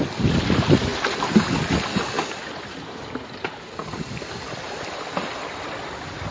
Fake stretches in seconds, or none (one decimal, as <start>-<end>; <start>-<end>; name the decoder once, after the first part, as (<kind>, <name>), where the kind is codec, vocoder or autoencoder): none